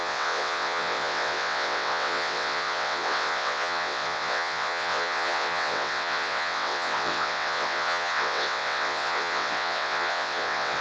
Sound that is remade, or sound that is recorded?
remade